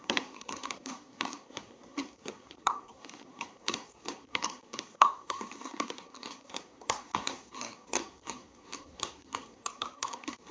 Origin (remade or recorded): remade